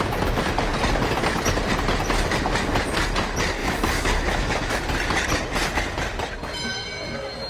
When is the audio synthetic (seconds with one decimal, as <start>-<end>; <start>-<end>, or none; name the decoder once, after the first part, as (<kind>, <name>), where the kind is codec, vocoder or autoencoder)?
3.6-4.7 (autoencoder, DAC-VAE)